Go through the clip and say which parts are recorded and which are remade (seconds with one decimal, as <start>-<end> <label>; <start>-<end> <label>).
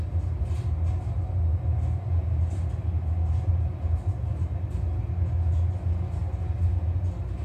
0.0-7.4 recorded